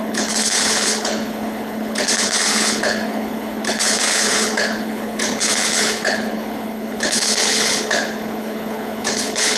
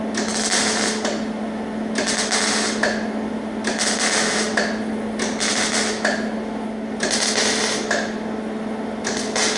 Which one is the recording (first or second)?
second